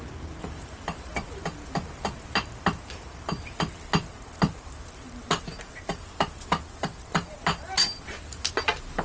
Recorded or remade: recorded